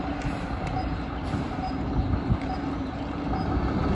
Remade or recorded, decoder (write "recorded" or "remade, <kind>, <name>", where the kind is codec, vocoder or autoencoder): recorded